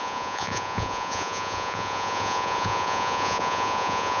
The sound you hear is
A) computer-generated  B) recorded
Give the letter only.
A